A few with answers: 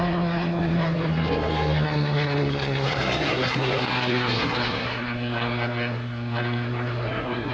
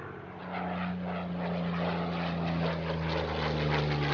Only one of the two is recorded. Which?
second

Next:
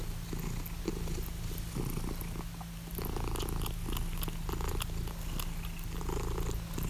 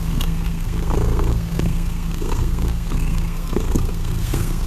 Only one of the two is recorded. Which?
first